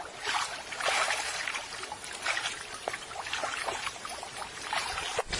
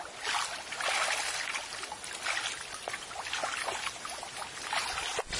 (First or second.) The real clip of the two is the second